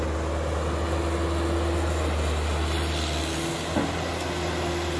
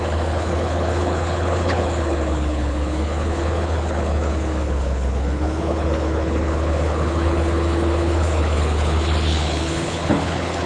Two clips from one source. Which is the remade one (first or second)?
second